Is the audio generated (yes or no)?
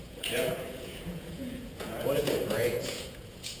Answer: yes